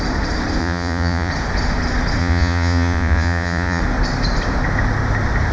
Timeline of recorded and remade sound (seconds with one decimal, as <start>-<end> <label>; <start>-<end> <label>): 0.0-0.6 recorded; 0.6-1.3 remade; 1.3-2.2 recorded; 2.2-3.8 remade; 3.8-5.5 recorded